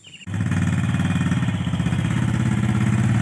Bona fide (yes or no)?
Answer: yes